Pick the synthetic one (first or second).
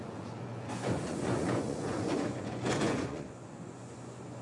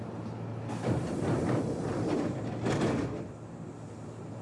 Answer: first